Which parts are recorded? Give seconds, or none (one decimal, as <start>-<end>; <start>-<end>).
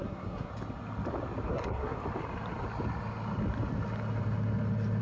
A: 0.5-1.5; 2.0-5.0